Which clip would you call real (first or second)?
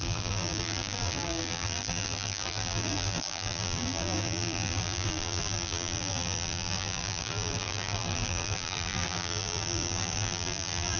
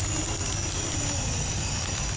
second